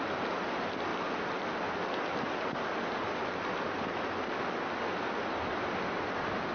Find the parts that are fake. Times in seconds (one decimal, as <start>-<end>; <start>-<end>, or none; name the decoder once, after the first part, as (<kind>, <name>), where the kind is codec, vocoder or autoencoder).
none